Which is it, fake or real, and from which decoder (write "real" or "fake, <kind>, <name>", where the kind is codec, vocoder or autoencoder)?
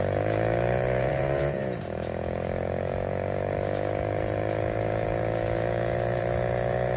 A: fake, vocoder, Vocos